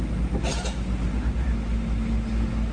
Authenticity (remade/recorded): recorded